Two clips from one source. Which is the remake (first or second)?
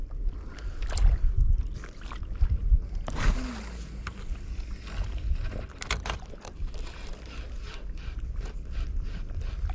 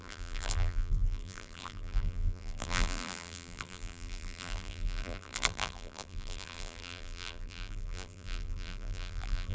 second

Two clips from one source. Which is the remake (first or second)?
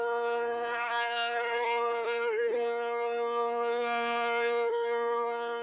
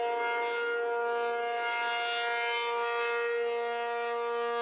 first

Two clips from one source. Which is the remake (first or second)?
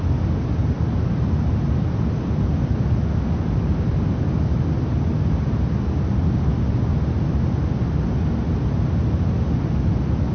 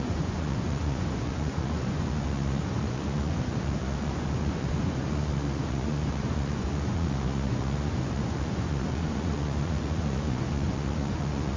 second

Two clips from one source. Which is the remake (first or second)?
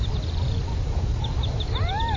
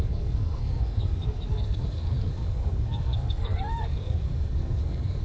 second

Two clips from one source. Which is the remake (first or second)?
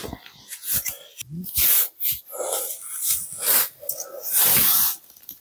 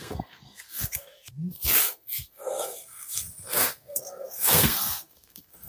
second